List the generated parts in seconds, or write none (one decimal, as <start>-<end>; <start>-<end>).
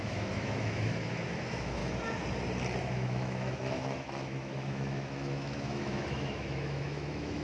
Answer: 0.0-1.8; 2.8-7.4